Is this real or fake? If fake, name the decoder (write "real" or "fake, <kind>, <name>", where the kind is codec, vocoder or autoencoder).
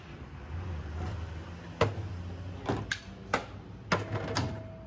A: real